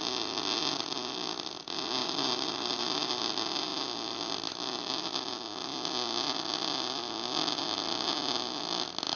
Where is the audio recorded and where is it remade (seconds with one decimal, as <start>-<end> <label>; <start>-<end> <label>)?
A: 0.0-2.0 recorded; 2.0-3.2 remade; 3.2-9.2 recorded